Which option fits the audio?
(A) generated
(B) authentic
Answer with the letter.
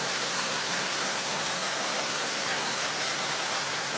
A